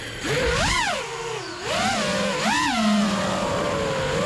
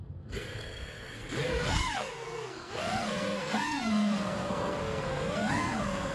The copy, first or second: second